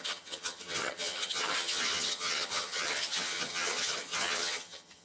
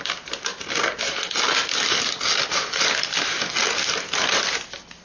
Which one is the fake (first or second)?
first